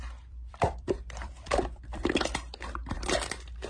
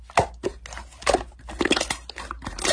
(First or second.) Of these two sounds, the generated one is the first